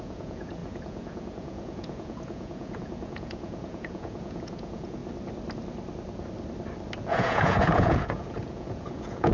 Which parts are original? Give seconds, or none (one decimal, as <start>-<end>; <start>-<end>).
5.0-7.0